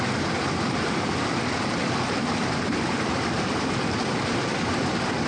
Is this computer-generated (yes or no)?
no